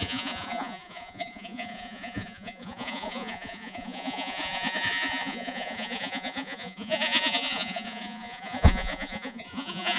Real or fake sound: fake